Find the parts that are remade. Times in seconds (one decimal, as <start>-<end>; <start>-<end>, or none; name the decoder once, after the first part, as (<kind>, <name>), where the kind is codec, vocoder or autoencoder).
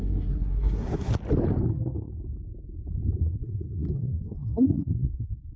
0.0-1.1 (codec, SNAC); 1.7-2.1; 3.2-5.6